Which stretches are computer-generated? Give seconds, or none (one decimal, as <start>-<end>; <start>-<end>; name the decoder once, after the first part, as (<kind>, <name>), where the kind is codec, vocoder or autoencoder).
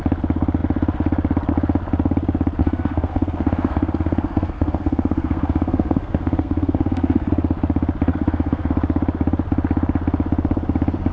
2.6-7.3 (codec, SNAC); 8.1-8.7